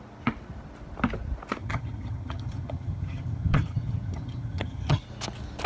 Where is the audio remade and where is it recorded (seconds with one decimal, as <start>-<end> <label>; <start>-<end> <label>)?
0.0-1.6 recorded; 1.6-5.0 remade; 5.0-5.7 recorded